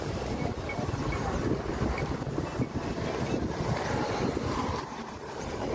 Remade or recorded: recorded